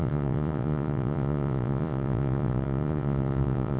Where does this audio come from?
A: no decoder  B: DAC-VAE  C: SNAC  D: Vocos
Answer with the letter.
D